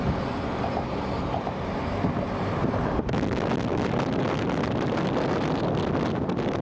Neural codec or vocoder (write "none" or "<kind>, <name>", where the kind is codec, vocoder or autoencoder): none